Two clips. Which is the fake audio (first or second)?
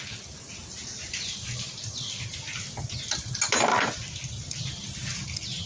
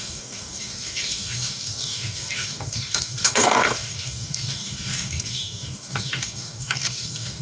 second